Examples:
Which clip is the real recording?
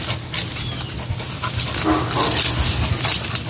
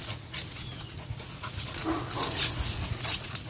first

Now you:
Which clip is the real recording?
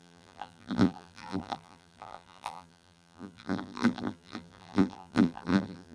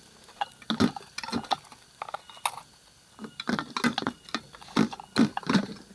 second